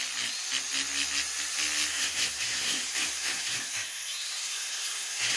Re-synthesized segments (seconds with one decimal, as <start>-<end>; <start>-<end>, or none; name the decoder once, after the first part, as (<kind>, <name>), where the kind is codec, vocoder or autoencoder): 1.9-5.4 (codec, SNAC)